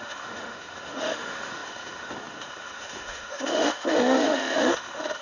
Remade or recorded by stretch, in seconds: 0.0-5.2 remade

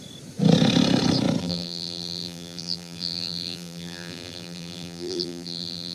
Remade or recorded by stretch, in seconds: 0.0-1.4 recorded; 1.4-5.9 remade

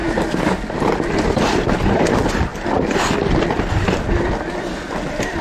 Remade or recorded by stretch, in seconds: 0.0-5.4 recorded

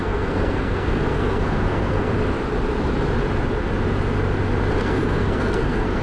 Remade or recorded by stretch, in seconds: 0.0-2.1 remade; 2.1-4.8 recorded; 4.8-6.0 remade

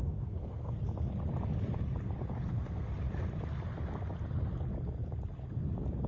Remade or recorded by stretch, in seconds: 0.0-0.8 remade; 0.8-2.5 recorded; 2.5-2.9 remade; 2.9-6.1 recorded